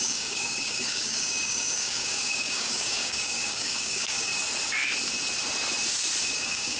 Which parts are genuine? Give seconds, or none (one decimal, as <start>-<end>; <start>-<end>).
4.3-6.2

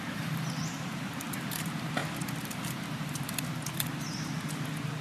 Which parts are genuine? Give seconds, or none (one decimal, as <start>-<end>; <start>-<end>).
2.0-5.0

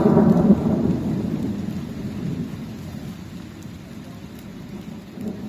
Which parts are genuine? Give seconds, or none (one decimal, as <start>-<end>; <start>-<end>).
0.0-5.5

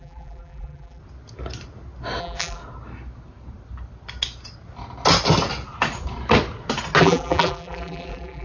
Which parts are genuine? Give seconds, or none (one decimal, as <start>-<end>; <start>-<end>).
1.0-2.2; 2.6-7.0

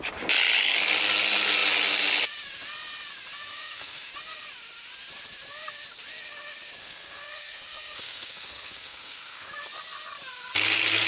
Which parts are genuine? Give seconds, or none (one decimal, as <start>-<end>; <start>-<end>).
0.0-3.5; 4.1-6.8; 9.5-11.1

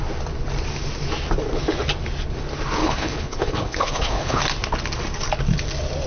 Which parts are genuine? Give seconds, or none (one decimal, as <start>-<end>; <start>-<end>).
0.0-2.8; 4.4-6.1

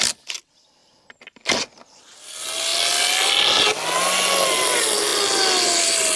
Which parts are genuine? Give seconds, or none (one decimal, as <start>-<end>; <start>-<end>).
0.0-6.2